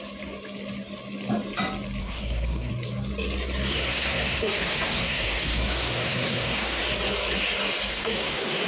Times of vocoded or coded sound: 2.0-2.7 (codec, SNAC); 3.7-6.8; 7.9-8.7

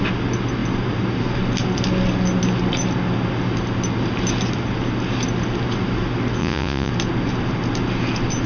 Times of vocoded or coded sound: 6.4-6.9 (vocoder, Vocos)

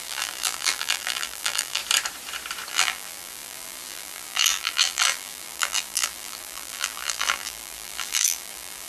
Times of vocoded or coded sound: 0.0-1.8 (vocoder, BigVGAN v2); 2.7-8.9

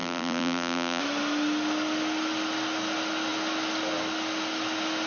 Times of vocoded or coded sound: 0.0-1.0 (vocoder, BigVGAN v2)

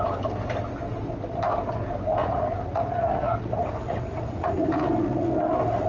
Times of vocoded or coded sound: 2.2-4.9 (vocoder, Vocos)

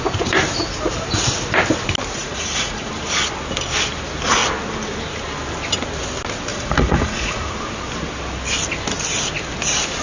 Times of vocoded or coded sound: 2.2-2.9 (vocoder, Vocos); 6.5-7.5

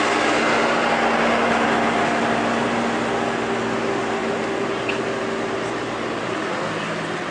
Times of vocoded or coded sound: 4.2-4.7 (vocoder, BigVGAN v2)

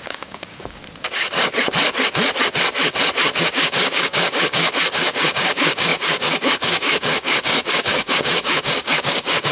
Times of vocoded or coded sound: 0.0-0.8 (codec, DAC); 3.4-9.5